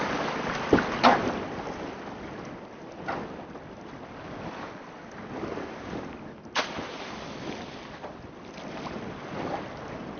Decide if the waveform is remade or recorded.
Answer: recorded